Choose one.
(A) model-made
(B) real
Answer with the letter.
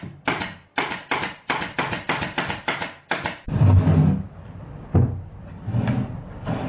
B